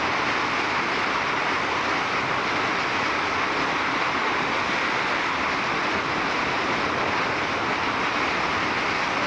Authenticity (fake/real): real